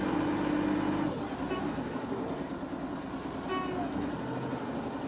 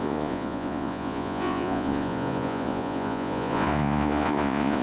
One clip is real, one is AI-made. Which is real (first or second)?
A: first